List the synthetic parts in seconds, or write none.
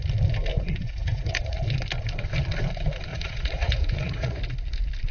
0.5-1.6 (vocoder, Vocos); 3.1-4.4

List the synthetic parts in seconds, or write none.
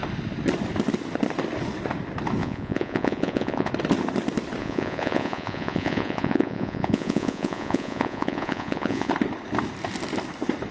2.4-3.7 (vocoder, Vocos); 4.6-9.1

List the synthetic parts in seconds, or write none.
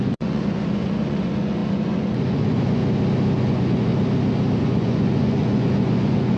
0.0-2.8 (vocoder, Vocos); 3.4-3.9; 4.6-6.4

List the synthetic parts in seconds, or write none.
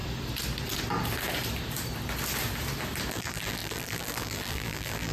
3.1-5.1 (vocoder, BigVGAN v2)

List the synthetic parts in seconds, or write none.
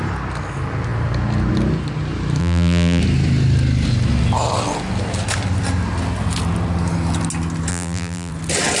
2.4-3.0 (vocoder, BigVGAN v2); 7.7-8.3